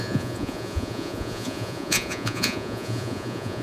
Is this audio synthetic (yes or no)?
yes